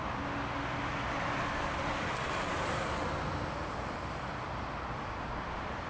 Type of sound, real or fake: real